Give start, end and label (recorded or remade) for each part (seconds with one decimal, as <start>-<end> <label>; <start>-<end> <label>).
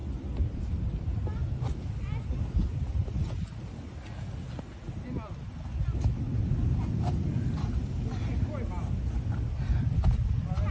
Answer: 0.0-10.7 recorded